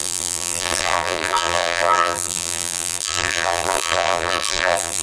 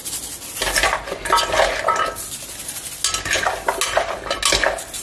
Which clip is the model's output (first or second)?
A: first